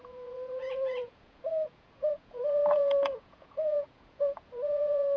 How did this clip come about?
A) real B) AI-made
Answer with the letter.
B